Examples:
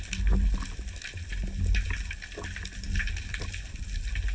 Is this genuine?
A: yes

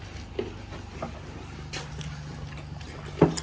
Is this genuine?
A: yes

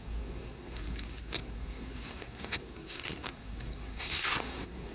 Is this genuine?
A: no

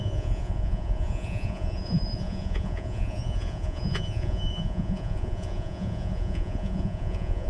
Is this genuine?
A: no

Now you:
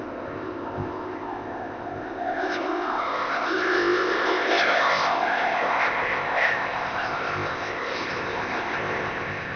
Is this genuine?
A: no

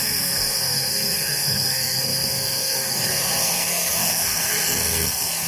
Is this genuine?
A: no